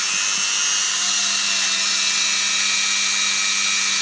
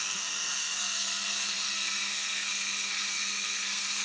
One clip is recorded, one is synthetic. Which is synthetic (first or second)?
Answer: second